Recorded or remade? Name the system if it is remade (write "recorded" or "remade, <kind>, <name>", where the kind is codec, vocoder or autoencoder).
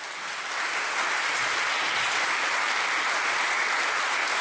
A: recorded